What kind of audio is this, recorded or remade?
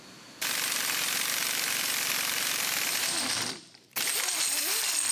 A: remade